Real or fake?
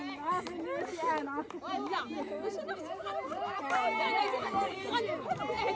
real